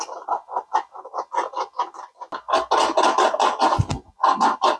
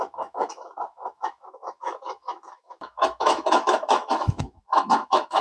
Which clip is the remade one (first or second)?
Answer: second